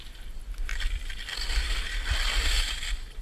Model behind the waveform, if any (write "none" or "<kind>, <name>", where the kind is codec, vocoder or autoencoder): none